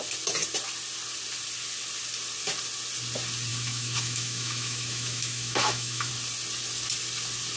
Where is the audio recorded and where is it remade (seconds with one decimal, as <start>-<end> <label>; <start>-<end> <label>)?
0.0-3.5 recorded; 3.5-6.1 remade; 6.1-7.6 recorded